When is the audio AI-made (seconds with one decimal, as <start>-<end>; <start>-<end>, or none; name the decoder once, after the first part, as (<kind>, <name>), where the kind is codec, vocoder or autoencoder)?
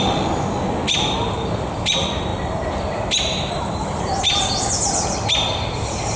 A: none